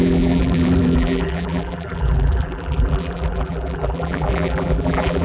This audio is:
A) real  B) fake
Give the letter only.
B